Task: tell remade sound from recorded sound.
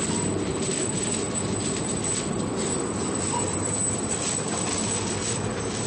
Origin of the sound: recorded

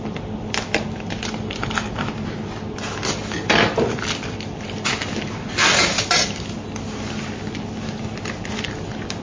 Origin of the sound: recorded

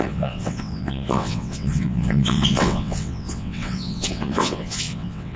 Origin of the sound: remade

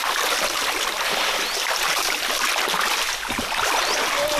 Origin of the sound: recorded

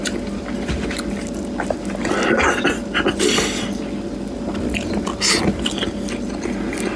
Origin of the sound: recorded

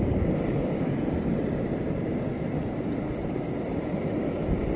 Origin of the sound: remade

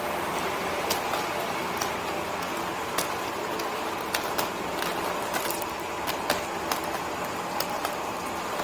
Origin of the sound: recorded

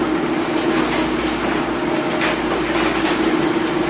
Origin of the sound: recorded